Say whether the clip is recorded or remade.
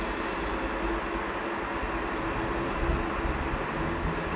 recorded